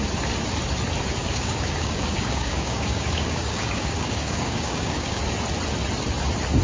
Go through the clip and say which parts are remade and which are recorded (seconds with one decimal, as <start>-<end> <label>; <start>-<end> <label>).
0.0-1.2 recorded; 1.2-5.2 remade; 5.2-6.6 recorded